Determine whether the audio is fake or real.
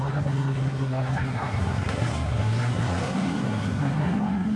fake